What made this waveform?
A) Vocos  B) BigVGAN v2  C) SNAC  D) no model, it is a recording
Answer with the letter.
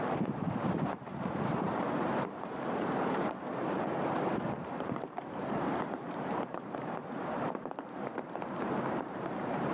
B